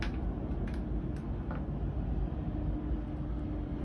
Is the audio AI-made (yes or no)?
no